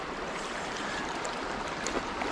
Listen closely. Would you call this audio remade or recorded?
recorded